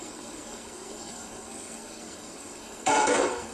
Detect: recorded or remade remade